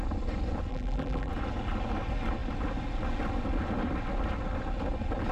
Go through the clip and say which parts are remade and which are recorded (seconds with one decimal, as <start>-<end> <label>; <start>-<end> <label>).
0.0-0.7 recorded; 0.7-1.3 remade; 1.3-5.3 recorded